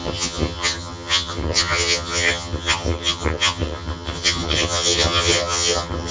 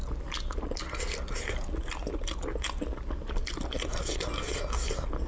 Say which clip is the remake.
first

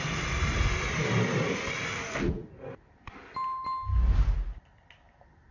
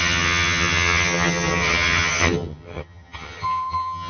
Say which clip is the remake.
second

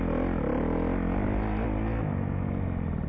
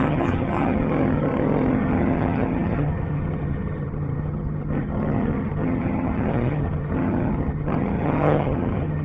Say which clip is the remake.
second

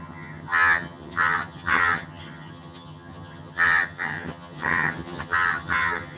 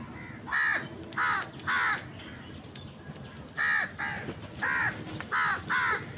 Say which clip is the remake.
first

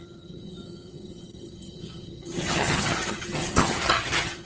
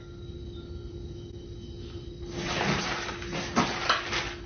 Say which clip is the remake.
first